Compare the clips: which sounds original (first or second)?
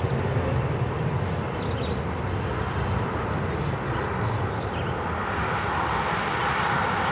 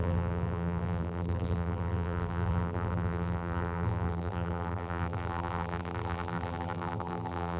first